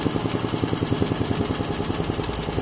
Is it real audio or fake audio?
real